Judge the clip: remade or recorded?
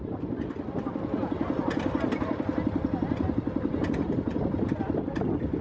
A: recorded